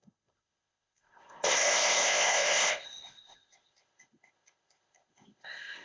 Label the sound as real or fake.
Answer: fake